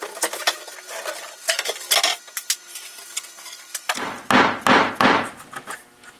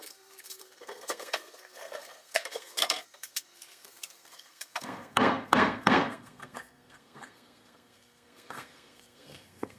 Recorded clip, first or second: first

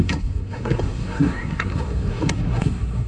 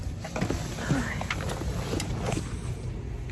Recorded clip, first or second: second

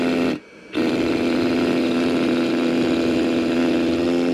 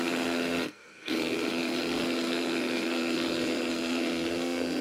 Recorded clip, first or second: first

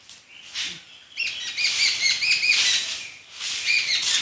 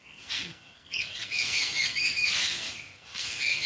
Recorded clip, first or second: first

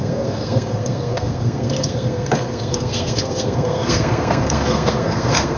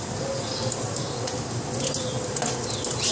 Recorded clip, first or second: second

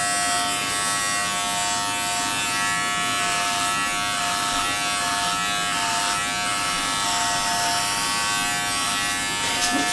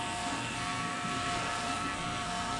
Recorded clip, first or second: first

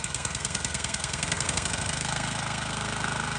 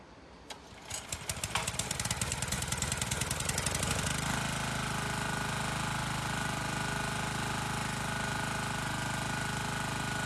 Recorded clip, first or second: second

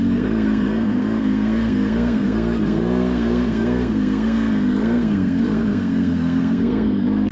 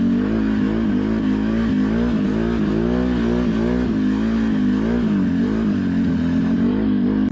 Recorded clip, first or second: second